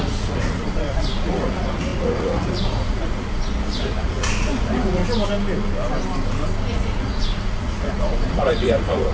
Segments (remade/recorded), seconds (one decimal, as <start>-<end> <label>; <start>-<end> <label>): 0.0-5.0 remade; 5.0-6.7 recorded; 6.7-9.1 remade